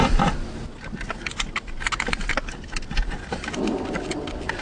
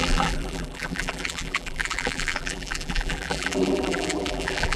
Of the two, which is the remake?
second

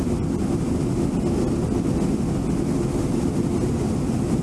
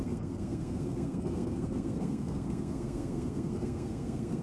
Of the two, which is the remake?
second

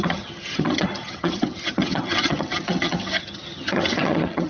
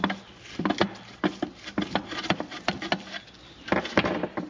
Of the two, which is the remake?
first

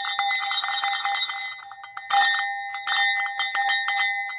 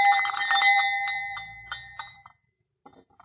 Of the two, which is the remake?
second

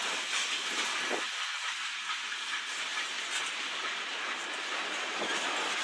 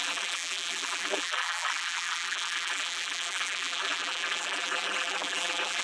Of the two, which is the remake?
second